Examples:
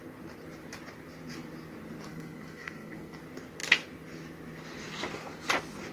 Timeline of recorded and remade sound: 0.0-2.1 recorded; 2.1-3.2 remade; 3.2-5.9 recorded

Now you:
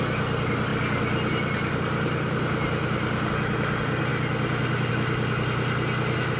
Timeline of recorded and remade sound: 0.0-6.4 recorded

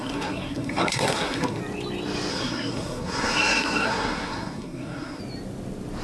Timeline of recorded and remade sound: 0.0-1.6 remade; 1.6-2.3 recorded; 2.3-5.2 remade; 5.2-6.0 recorded

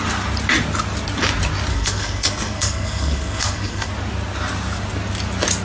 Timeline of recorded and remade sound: 0.0-1.7 recorded; 1.7-3.9 remade; 3.9-5.6 recorded

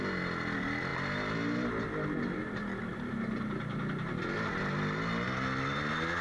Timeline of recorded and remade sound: 0.0-6.2 recorded

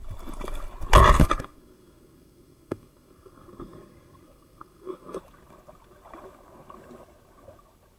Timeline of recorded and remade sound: 0.0-1.2 recorded; 1.2-5.2 remade; 5.2-8.0 recorded

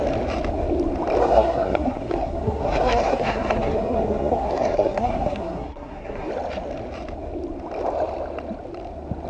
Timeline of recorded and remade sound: 0.0-1.2 recorded; 1.2-6.3 remade; 6.3-9.3 recorded

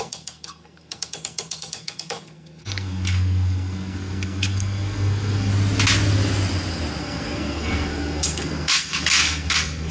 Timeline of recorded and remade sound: 0.0-5.5 remade; 5.5-7.0 recorded; 7.0-9.9 remade